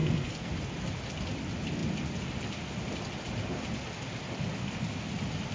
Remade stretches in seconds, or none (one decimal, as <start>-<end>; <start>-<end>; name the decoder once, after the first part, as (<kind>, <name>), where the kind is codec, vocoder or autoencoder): 0.0-0.5 (codec, SNAC)